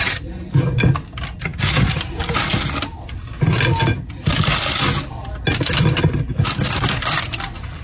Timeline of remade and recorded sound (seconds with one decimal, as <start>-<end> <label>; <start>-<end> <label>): 0.0-7.8 recorded